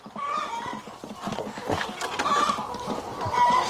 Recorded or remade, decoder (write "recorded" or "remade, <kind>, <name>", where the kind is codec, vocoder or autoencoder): recorded